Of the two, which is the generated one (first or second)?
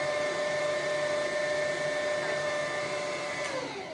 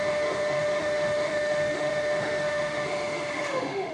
second